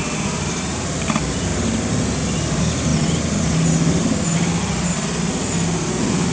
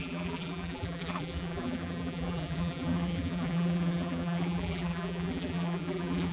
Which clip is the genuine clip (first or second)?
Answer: first